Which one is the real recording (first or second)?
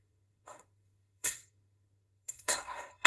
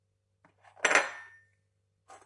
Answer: second